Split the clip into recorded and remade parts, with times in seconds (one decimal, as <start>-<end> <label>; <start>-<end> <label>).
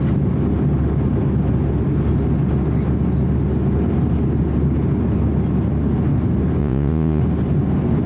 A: 0.0-6.6 recorded; 6.6-7.2 remade; 7.2-8.1 recorded